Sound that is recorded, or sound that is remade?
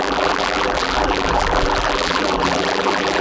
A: remade